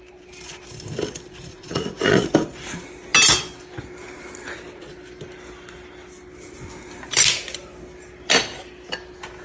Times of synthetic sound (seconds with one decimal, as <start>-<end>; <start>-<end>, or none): 1.5-2.3